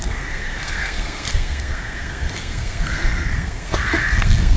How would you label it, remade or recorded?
remade